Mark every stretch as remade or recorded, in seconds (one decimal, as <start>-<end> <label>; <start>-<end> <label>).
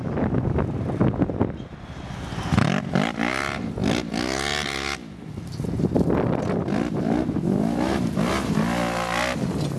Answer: 0.0-9.8 recorded